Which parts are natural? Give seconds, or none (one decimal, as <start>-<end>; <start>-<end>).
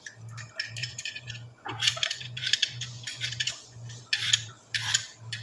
0.0-0.8; 4.0-5.4